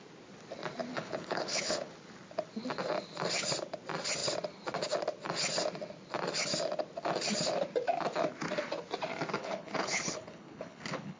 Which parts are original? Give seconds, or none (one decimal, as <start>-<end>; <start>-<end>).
0.0-0.9; 1.9-9.4